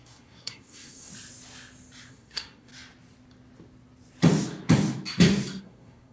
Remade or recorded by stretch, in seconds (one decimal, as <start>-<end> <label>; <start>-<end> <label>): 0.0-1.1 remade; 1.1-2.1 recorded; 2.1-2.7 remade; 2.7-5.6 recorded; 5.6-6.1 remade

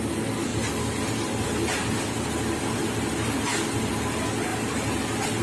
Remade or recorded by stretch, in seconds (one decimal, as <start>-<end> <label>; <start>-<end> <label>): 0.0-5.4 recorded

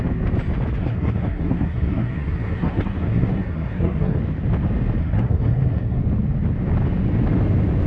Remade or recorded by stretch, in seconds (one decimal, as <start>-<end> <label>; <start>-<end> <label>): 0.0-0.8 recorded; 0.8-4.2 remade; 4.2-5.0 recorded; 5.0-6.0 remade; 6.0-7.9 recorded

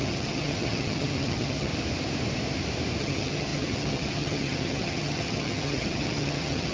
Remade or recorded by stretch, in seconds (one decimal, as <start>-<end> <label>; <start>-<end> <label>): 0.0-1.7 remade; 1.7-3.0 recorded; 3.0-6.7 remade

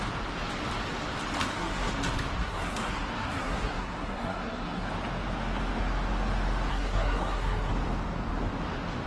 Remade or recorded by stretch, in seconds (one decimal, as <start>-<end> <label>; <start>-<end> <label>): 0.0-1.4 recorded; 1.4-1.9 remade; 1.9-2.4 recorded; 2.4-4.9 remade; 4.9-6.7 recorded; 6.7-7.7 remade; 7.7-9.1 recorded

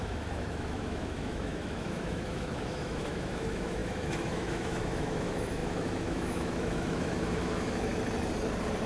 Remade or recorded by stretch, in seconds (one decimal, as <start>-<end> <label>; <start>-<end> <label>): 0.0-7.9 remade; 7.9-8.9 recorded